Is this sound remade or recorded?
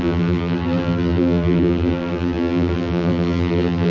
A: remade